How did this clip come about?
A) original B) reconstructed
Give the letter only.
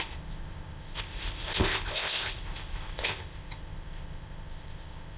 B